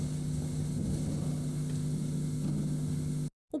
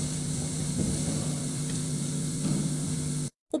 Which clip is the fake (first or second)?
second